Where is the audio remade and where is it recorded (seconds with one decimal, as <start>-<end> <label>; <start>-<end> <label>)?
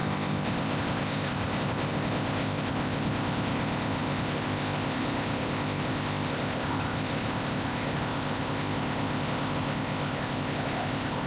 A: 0.0-11.3 remade